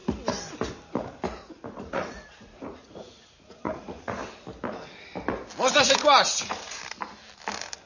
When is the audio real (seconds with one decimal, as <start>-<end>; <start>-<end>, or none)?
0.0-1.5; 4.2-5.7; 6.8-7.9